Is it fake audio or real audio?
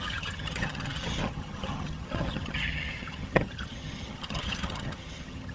fake